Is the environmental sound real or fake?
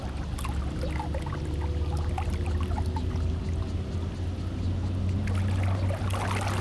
real